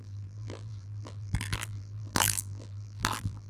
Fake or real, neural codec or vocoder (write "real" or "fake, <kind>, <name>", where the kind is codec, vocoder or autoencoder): fake, vocoder, BigVGAN v2